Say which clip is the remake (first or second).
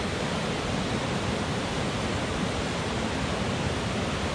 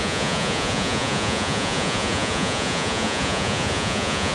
second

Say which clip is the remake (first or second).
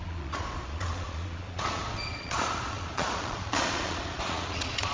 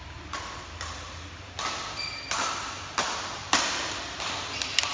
first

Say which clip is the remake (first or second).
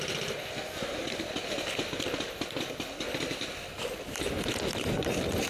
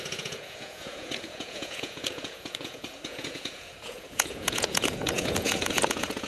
second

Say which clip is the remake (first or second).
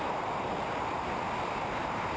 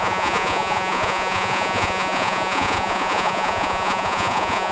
second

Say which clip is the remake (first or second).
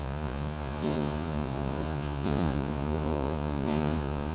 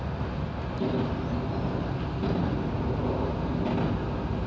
first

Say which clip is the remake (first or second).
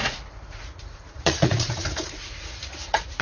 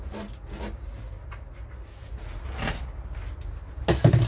first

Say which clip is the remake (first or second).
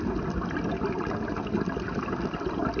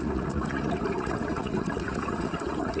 second